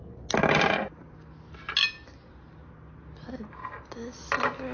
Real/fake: real